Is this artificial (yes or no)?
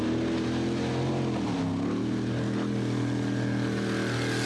no